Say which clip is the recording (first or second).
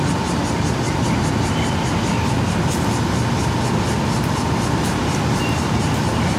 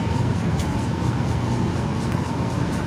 first